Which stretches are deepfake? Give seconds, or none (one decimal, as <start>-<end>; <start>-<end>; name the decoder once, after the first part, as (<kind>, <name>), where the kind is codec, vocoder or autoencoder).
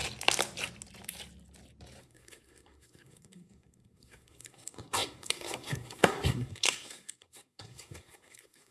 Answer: 2.0-8.7 (codec, SNAC)